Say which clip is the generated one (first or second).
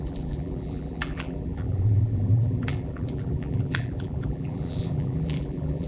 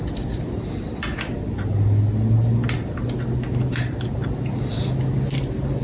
first